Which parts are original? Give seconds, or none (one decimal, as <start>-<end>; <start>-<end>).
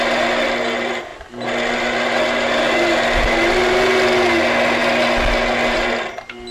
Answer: 0.0-6.5